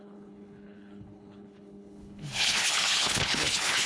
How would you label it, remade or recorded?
remade